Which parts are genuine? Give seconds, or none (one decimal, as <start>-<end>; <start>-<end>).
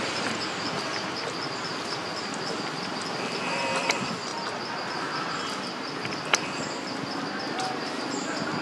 0.0-8.6